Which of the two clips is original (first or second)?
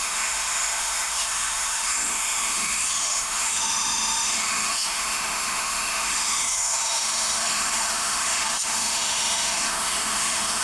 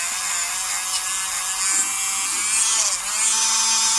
second